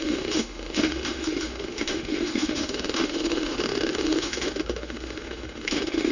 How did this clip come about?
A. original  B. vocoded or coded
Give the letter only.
B